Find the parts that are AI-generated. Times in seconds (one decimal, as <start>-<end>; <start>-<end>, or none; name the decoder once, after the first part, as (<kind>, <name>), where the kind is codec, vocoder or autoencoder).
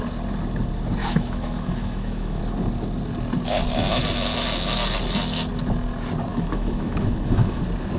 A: 1.0-2.4 (autoencoder, DAC-VAE); 6.3-7.6